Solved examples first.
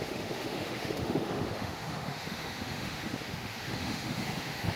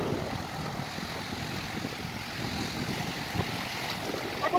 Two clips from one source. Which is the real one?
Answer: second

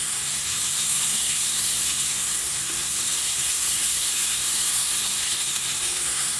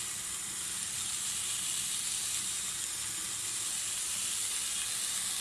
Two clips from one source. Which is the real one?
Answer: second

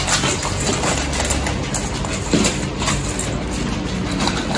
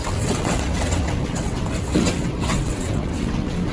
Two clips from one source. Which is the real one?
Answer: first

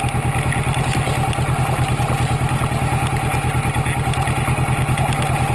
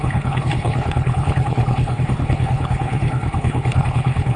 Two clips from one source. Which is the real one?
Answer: first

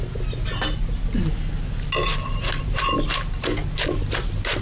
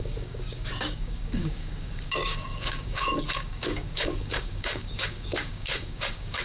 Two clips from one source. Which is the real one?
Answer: first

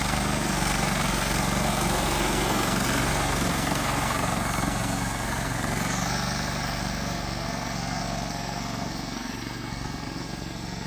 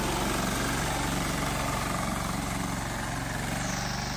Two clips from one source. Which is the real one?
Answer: second